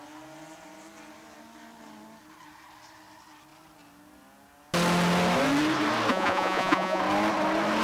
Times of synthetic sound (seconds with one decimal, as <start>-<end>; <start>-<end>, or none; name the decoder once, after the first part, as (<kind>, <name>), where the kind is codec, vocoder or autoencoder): 6.1-7.0 (vocoder, Vocos)